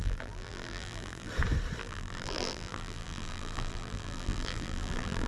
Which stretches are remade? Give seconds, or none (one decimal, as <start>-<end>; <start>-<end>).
0.0-1.3; 1.8-5.3